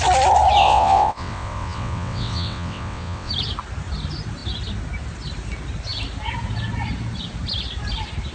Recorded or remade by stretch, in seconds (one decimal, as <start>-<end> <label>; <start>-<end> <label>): 0.0-0.6 recorded; 0.6-3.3 remade; 3.3-8.3 recorded